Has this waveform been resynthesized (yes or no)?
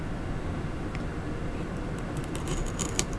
no